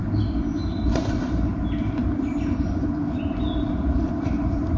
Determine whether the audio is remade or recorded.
recorded